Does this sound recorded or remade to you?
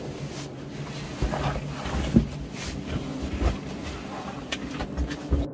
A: recorded